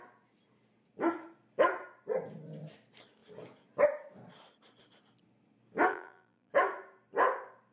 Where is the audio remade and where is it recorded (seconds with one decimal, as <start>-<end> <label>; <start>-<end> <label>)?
0.0-5.9 recorded; 5.9-6.5 remade; 6.5-7.7 recorded